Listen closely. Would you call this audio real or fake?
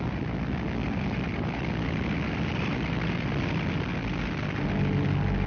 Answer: real